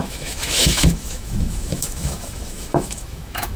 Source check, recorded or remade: remade